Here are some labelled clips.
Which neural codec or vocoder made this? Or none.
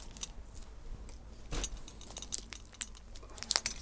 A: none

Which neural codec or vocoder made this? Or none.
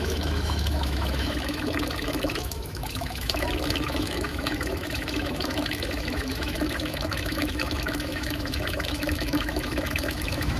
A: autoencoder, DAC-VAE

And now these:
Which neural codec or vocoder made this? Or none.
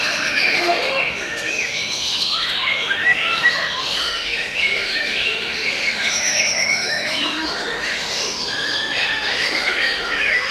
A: autoencoder, DAC-VAE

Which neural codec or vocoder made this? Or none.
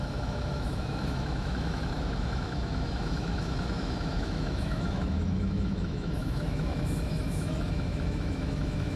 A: autoencoder, DAC-VAE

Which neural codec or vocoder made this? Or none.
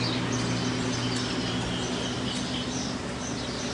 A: none